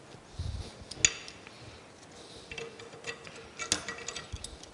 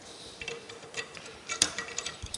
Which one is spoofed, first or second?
second